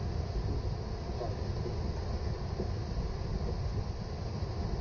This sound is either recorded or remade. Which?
recorded